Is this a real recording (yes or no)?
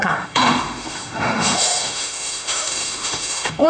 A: no